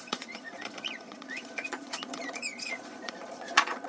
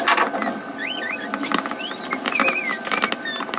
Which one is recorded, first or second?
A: second